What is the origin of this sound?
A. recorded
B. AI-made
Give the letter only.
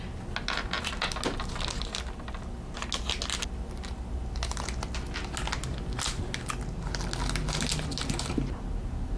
A